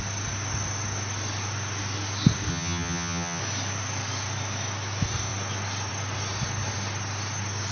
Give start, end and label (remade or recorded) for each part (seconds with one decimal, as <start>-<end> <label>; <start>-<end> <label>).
0.0-2.5 recorded; 2.5-3.4 remade; 3.4-7.7 recorded